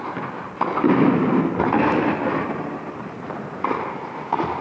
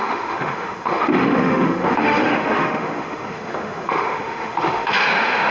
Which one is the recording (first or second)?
first